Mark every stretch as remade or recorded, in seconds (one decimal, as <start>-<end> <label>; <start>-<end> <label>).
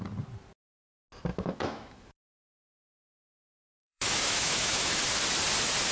0.0-1.3 recorded; 1.3-2.4 remade; 2.4-3.4 recorded; 3.4-5.0 remade; 5.0-5.9 recorded